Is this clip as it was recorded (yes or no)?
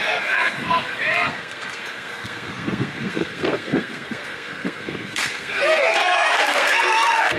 no